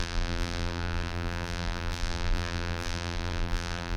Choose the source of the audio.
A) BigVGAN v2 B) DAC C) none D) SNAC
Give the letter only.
A